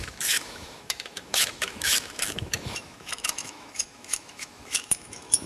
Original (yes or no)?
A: no